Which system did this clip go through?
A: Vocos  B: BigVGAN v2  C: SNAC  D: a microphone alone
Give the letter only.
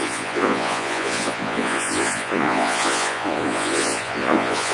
A